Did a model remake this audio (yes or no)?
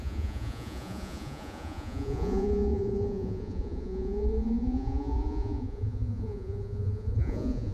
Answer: yes